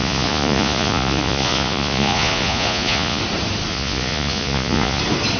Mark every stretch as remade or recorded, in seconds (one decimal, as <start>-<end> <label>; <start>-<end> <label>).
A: 0.0-3.2 remade; 3.2-3.7 recorded; 3.7-5.0 remade; 5.0-5.4 recorded